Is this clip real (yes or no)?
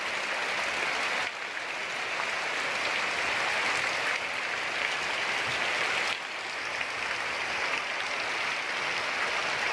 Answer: yes